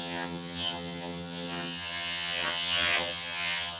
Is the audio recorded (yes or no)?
no